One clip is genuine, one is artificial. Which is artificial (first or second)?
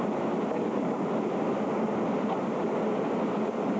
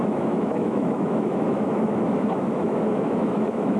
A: second